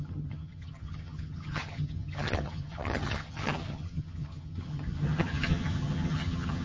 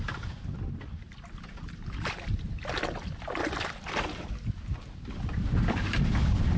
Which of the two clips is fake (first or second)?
first